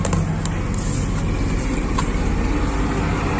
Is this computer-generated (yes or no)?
no